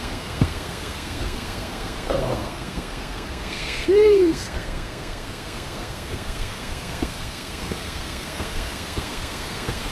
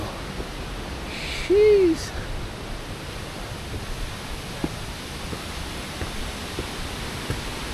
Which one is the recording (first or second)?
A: second